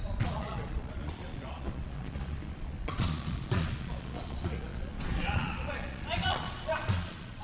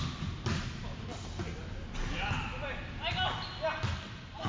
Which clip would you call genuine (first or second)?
second